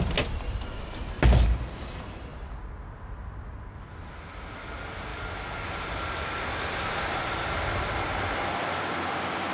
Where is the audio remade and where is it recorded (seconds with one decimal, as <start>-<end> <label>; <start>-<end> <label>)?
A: 0.0-9.5 recorded